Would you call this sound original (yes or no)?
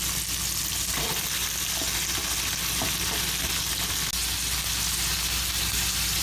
yes